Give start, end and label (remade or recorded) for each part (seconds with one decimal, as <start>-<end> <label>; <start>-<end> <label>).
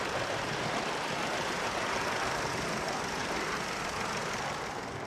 0.0-5.1 recorded